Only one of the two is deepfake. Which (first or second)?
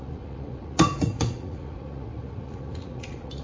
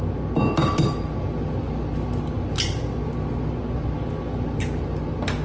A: first